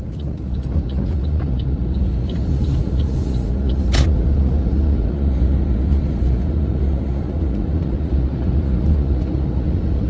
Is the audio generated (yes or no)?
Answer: yes